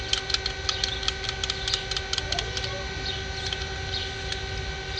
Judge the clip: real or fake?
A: real